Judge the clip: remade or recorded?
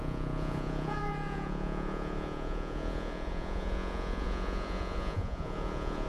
remade